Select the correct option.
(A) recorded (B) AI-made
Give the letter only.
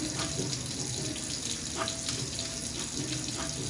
A